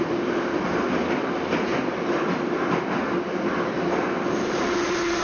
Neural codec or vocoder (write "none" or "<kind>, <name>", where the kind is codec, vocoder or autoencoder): none